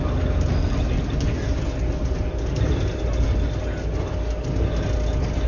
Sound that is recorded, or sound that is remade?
recorded